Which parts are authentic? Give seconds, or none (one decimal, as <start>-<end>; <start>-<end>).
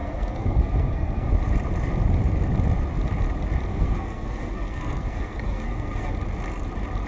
1.3-3.7; 6.1-7.1